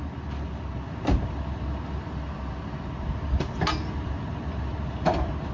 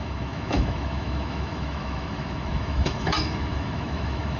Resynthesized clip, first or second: second